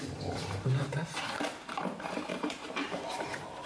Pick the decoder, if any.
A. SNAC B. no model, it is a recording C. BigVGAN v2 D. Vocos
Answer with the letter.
C